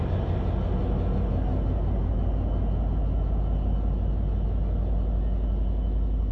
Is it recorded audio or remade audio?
recorded